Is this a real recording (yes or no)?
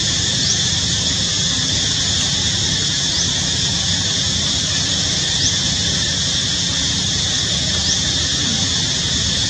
no